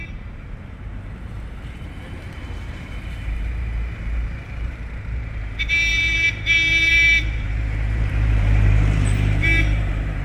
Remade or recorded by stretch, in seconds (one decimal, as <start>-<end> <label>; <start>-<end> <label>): 0.0-10.2 remade